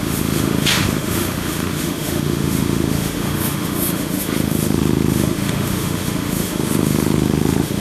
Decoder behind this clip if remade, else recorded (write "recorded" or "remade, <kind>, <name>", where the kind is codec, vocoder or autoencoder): remade, autoencoder, DAC-VAE